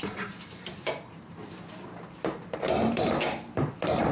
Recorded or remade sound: remade